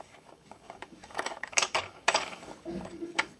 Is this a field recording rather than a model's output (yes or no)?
no